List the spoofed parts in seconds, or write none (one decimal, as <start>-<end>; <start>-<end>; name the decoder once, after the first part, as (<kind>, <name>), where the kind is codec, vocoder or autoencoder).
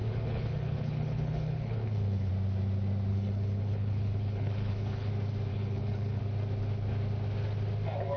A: 0.0-2.3 (codec, HILCodec); 3.1-5.1; 5.5-6.2